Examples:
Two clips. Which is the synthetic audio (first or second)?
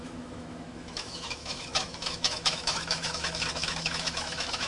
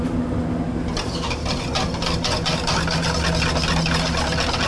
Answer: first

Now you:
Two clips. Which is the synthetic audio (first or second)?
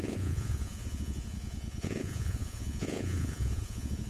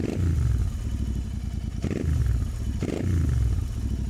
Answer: first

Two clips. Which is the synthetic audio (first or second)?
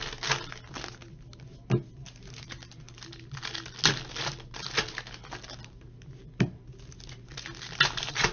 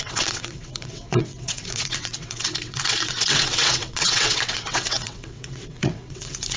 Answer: second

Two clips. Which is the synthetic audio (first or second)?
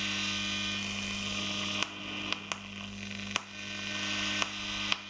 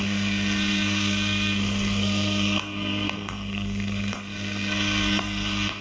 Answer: second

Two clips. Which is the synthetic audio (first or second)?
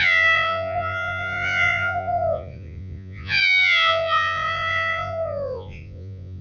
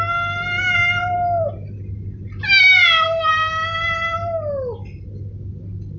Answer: first